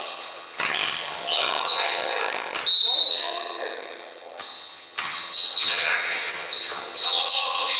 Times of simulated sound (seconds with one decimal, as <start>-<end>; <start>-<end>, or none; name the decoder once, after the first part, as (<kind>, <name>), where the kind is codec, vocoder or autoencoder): 0.0-2.6 (vocoder, HiFi-GAN); 3.1-7.8